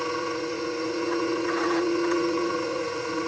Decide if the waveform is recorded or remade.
remade